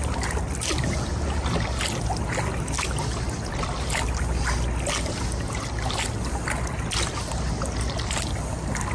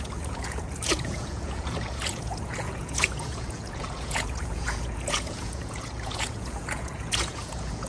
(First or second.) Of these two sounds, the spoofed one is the second